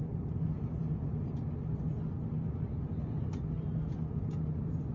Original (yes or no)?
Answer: yes